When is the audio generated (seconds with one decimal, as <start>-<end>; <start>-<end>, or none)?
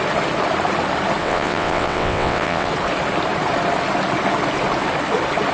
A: 1.2-2.7